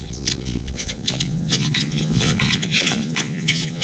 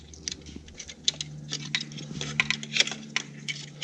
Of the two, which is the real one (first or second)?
second